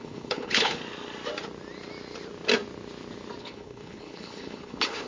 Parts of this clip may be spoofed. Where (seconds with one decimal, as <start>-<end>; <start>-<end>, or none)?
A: 0.0-0.8; 3.4-5.1